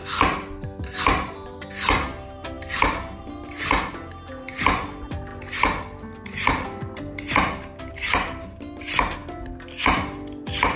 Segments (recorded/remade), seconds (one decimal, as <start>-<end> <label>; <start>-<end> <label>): 0.0-10.8 recorded